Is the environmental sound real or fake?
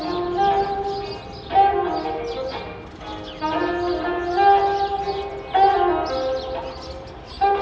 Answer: real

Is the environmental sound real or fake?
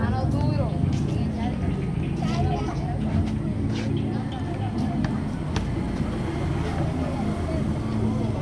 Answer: real